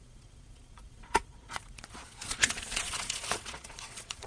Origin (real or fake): fake